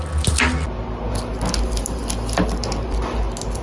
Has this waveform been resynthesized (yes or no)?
no